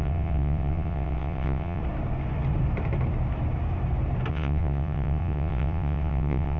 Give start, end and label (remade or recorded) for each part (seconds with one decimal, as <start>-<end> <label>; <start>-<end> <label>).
0.0-1.8 remade; 1.8-4.3 recorded; 4.3-6.6 remade